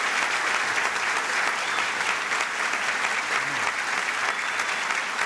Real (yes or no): yes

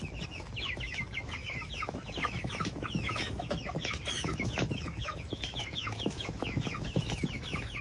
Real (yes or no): no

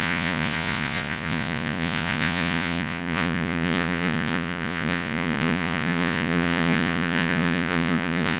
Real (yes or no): no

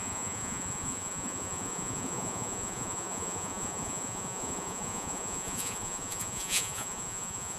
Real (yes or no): no